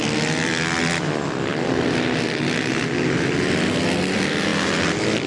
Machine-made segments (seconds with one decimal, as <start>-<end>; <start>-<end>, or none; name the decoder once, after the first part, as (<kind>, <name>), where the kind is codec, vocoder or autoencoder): none